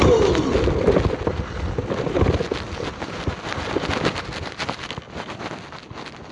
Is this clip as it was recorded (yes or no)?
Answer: yes